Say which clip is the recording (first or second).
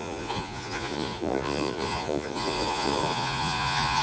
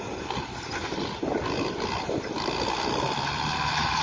second